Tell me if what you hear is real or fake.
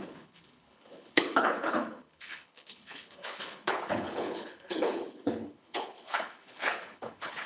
fake